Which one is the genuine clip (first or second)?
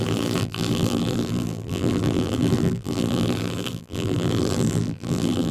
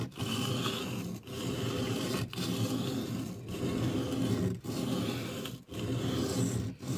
second